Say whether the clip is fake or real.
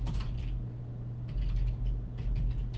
real